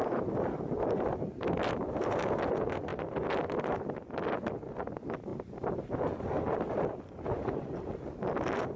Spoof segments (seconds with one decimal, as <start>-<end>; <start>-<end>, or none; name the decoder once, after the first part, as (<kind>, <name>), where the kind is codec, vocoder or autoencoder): 0.0-1.7 (vocoder, BigVGAN v2); 2.9-4.2; 5.3-5.9